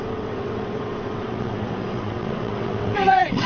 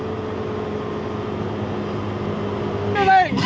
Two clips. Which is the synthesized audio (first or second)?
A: first